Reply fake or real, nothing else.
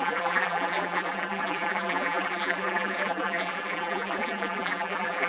fake